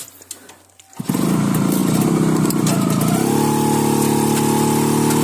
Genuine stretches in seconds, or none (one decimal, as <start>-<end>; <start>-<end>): 0.0-5.2